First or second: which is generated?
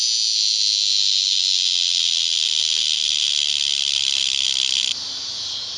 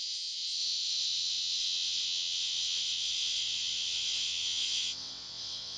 second